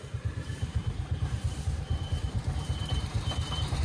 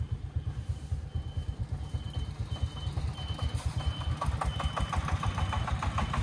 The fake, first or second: first